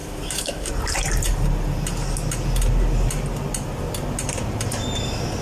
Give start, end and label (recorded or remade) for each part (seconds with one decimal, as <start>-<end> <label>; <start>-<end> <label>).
0.0-0.7 remade; 0.7-5.4 recorded